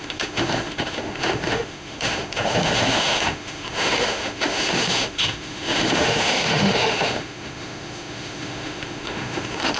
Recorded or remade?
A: remade